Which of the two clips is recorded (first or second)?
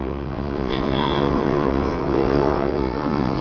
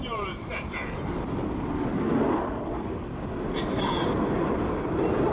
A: second